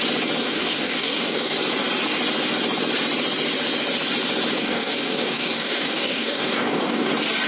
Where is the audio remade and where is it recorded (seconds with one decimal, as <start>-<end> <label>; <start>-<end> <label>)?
0.0-0.4 recorded; 0.4-1.5 remade; 1.5-4.6 recorded; 4.6-7.1 remade; 7.1-7.5 recorded